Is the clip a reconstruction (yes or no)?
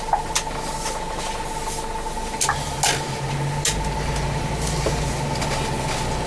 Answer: no